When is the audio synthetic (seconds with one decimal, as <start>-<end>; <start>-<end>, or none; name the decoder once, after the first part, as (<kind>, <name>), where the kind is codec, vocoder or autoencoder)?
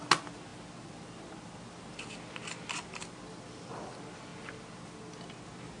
none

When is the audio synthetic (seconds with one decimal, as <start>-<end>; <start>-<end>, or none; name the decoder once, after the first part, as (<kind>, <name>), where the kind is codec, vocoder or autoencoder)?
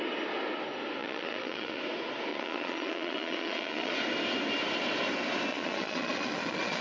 1.0-1.8 (vocoder, Vocos); 2.3-3.9; 5.5-6.8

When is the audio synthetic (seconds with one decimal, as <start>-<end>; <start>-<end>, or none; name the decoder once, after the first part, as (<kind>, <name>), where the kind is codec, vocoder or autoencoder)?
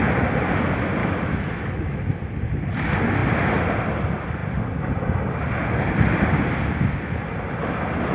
1.0-2.0 (autoencoder, DAC-VAE)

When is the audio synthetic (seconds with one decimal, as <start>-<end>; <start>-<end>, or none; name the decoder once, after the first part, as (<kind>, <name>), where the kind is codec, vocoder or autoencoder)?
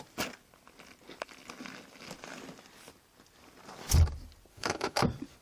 4.5-5.0 (autoencoder, DAC-VAE)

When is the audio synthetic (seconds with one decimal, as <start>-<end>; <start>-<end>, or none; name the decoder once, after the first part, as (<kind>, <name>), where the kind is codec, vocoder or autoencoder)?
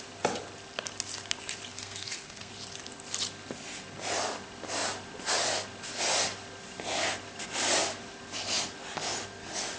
1.7-2.5 (codec, SNAC)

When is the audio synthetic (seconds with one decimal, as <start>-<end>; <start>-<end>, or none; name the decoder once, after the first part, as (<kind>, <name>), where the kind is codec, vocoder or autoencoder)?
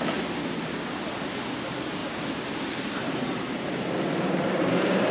2.0-5.1 (vocoder, BigVGAN v2)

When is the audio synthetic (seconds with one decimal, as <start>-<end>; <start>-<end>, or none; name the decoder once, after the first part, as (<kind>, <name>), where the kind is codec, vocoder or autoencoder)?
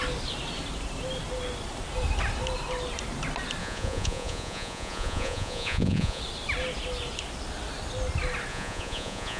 3.6-6.2 (vocoder, Vocos); 8.5-9.4